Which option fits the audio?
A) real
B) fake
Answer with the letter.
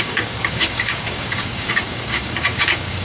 B